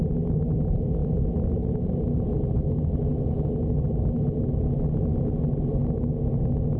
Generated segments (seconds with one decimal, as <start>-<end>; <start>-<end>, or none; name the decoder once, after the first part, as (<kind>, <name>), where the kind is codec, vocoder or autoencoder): none